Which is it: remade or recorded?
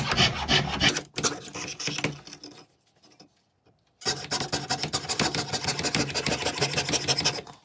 recorded